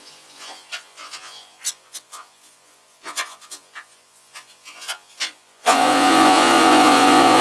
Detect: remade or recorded remade